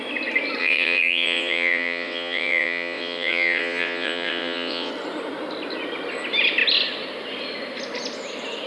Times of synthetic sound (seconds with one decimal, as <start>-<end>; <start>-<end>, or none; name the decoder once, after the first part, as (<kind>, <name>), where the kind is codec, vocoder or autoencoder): 0.6-4.9 (vocoder, WaveNeXt)